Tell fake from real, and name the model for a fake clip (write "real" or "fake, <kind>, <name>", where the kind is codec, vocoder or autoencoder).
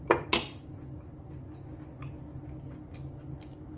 real